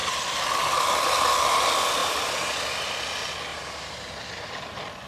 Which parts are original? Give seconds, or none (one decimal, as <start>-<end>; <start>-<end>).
0.0-2.0; 2.9-3.5; 4.1-5.1

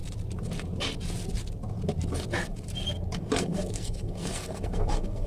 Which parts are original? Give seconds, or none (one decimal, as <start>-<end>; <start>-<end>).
0.0-3.2

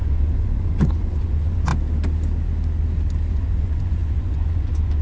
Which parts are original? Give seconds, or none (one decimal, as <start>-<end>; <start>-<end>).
1.7-3.3

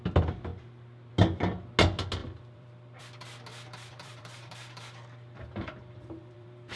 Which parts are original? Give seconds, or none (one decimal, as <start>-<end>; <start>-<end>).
0.0-2.2; 3.0-3.5

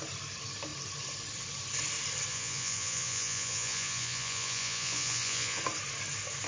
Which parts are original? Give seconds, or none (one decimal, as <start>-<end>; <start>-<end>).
0.0-2.3; 5.6-6.5